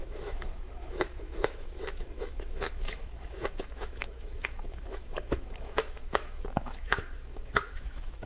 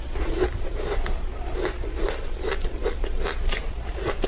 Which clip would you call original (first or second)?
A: second